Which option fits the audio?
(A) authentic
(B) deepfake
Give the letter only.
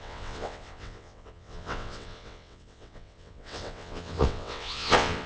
B